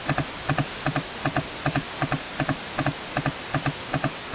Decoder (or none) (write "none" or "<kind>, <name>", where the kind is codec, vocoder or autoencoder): none